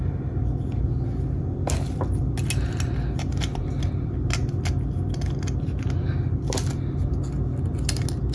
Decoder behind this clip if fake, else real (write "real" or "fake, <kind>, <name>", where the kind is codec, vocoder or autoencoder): real